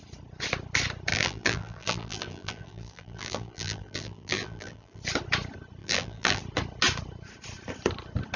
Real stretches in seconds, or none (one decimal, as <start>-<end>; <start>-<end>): 0.0-1.1; 5.0-5.8; 6.4-8.4